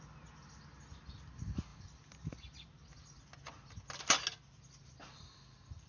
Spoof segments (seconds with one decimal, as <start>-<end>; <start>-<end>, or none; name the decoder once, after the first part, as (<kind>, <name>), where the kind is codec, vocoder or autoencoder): none